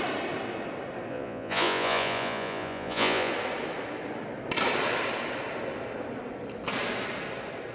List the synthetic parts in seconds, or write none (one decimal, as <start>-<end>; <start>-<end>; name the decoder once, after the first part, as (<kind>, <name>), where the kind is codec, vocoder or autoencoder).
1.1-3.3 (vocoder, Vocos)

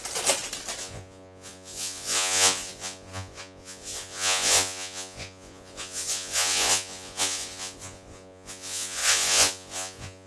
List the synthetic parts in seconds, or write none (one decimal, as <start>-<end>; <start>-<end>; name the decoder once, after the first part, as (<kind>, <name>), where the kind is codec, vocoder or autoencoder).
0.8-10.3 (vocoder, Vocos)